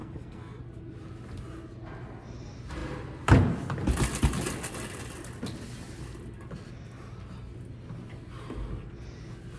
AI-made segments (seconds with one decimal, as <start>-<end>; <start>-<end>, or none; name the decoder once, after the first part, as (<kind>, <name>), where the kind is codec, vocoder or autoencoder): 0.0-0.6 (codec, SNAC)